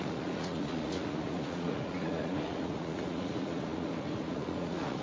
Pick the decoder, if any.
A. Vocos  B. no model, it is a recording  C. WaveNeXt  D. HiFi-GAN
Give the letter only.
A